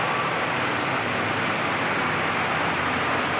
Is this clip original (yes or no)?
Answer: yes